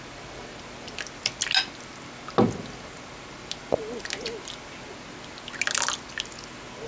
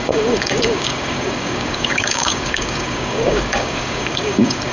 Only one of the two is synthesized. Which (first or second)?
second